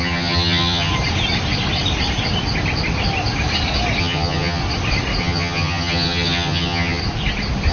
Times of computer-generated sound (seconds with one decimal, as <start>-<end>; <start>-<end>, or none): 0.0-0.9; 4.0-4.6; 5.2-7.0